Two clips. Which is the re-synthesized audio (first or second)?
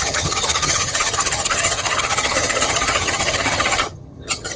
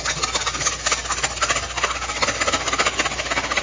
first